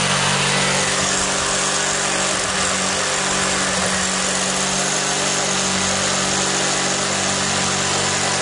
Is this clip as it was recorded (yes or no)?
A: yes